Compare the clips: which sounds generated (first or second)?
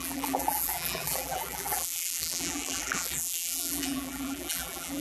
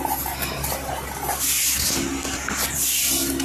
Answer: first